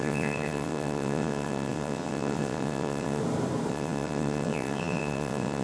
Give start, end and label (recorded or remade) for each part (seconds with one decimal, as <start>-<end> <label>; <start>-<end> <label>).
0.0-3.2 remade; 3.2-3.7 recorded; 3.7-5.6 remade